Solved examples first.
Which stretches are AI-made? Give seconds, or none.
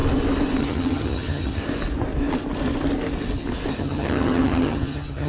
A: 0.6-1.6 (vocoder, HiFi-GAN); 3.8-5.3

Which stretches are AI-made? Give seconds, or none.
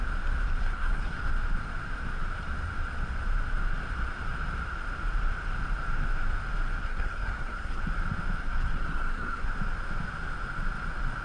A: 0.6-1.3 (codec, SNAC); 6.8-7.8; 8.4-9.5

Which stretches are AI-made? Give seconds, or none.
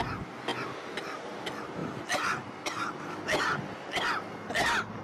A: none